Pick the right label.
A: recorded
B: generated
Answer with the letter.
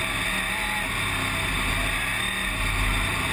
A